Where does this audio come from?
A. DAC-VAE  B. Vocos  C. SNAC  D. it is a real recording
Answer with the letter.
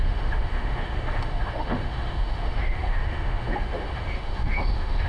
A